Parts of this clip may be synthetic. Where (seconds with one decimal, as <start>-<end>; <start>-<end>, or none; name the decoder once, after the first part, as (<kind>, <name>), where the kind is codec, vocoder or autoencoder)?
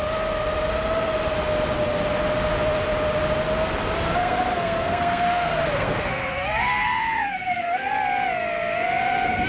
4.1-7.9 (codec, SNAC)